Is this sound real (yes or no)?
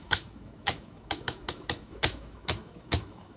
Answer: no